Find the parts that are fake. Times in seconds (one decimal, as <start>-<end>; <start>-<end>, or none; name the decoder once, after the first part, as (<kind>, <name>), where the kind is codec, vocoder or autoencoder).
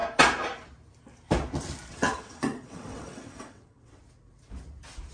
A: 1.9-4.0 (vocoder, WaveNeXt)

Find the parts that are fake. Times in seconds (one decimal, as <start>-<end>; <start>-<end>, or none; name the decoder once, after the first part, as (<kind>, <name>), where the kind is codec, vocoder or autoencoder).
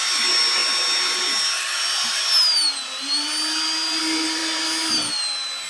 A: none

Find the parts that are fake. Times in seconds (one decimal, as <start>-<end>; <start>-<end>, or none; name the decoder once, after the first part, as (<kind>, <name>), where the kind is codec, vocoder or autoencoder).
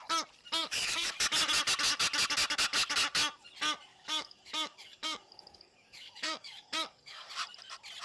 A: 0.6-1.1 (codec, DAC); 3.9-7.3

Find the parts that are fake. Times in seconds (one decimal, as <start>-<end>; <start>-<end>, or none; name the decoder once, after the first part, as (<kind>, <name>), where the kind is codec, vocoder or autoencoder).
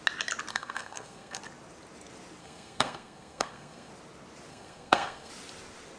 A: 0.5-1.4 (codec, SNAC); 2.4-3.9; 4.5-5.3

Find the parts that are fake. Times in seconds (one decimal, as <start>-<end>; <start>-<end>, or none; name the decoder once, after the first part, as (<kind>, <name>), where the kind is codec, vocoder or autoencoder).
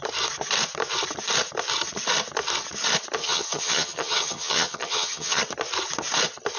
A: 3.2-5.4 (vocoder, HiFi-GAN)